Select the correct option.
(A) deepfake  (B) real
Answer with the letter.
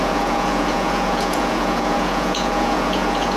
A